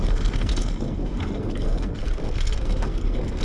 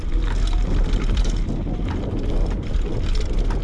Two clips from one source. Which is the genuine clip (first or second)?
second